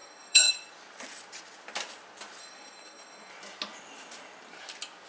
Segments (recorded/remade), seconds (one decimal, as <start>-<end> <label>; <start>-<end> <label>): 0.0-0.5 remade; 0.5-2.4 recorded; 2.4-3.3 remade; 3.3-5.1 recorded